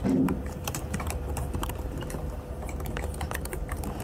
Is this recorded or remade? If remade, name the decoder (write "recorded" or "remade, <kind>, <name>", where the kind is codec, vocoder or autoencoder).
remade, vocoder, BigVGAN v2